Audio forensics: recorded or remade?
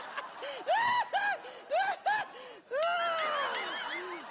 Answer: recorded